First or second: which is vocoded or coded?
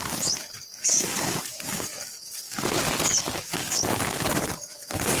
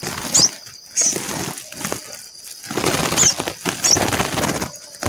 first